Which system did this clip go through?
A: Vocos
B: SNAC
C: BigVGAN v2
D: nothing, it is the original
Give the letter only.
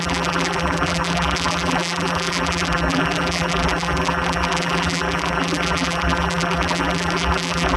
C